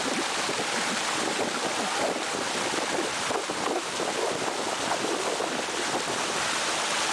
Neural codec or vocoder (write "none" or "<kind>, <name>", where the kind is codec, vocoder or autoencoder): none